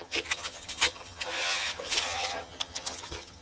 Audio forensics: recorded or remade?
remade